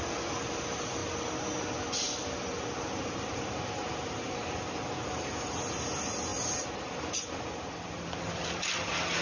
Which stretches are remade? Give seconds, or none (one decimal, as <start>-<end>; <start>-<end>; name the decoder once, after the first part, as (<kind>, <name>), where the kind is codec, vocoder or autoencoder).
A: none